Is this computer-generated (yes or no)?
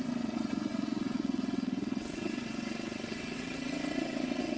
yes